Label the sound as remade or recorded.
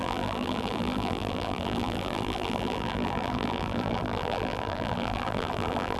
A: remade